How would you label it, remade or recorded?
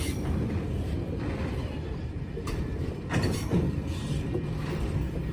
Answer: remade